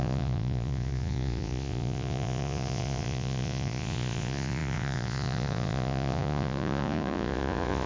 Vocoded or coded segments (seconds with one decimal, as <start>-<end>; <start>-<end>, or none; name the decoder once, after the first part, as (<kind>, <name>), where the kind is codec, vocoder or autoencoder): 0.0-7.9 (vocoder, Vocos)